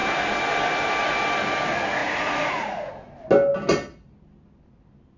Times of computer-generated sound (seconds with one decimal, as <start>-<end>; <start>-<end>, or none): 2.0-2.9